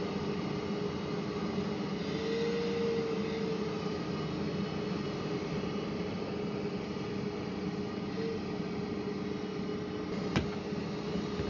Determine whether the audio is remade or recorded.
recorded